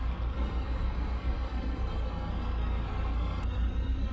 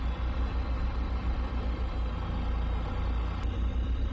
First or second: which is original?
second